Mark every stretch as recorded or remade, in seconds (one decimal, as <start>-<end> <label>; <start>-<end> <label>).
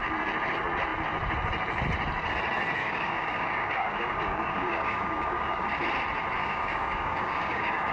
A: 0.0-2.8 recorded; 2.8-5.8 remade; 5.8-6.4 recorded; 6.4-7.9 remade